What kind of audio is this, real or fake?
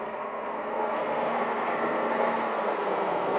fake